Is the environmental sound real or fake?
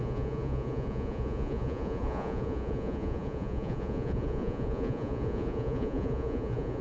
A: fake